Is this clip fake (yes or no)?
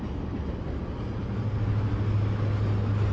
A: no